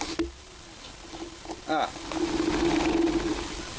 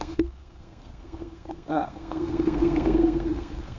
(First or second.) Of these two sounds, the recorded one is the first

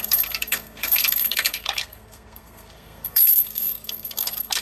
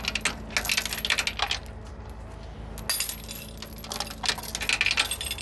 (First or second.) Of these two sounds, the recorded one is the second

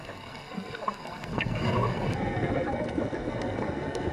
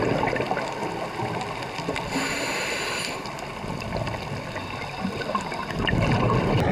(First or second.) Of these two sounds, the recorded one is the second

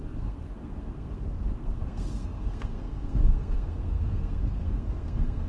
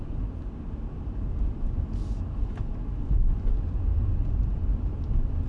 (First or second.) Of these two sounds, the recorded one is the second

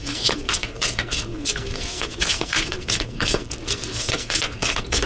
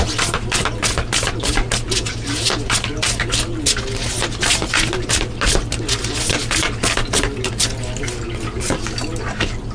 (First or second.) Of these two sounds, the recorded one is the second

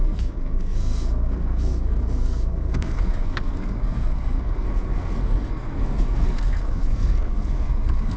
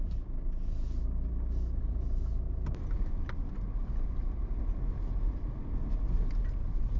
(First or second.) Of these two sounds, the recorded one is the second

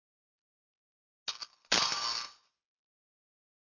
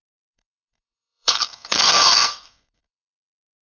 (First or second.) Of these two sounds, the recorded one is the first